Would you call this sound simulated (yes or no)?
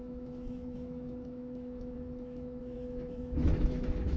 yes